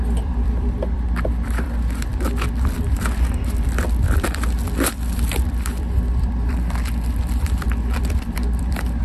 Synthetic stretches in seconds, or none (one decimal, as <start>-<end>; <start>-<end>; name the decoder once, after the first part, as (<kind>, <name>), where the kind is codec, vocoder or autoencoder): 0.0-2.1 (vocoder, BigVGAN v2); 2.8-9.0